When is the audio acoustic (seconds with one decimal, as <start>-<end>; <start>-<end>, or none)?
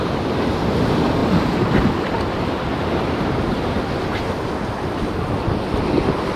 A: 0.0-6.4